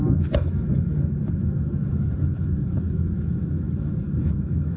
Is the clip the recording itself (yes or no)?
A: no